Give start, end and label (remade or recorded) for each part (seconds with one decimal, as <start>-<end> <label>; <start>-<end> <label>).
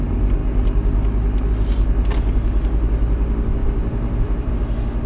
0.0-0.4 recorded; 0.4-1.5 remade; 1.5-3.6 recorded; 3.6-4.5 remade; 4.5-5.1 recorded